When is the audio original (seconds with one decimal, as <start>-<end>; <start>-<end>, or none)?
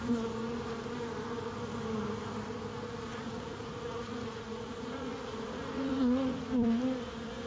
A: 0.0-3.1; 6.5-7.5